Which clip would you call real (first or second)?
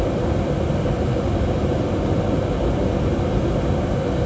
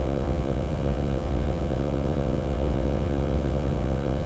first